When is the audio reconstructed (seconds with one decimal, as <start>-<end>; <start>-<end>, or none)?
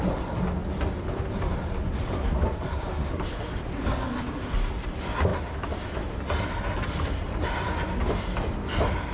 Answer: none